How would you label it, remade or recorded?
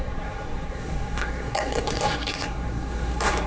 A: remade